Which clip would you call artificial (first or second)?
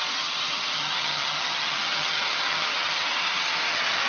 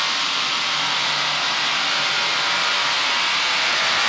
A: first